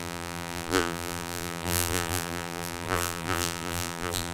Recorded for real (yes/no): no